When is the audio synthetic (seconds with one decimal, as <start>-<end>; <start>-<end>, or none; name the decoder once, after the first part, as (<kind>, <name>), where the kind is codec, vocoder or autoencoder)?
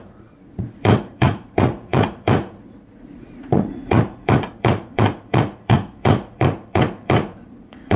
0.0-8.0 (vocoder, Vocos)